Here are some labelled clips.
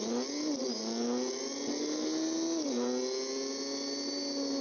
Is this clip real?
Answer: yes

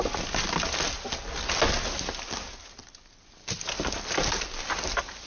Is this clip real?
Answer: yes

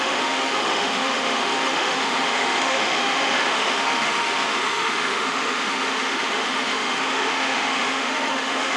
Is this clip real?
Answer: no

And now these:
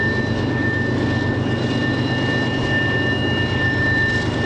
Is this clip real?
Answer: yes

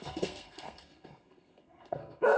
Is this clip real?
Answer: no